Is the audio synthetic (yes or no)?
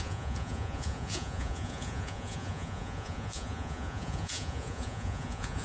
yes